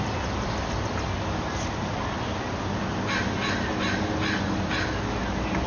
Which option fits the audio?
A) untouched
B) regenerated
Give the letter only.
A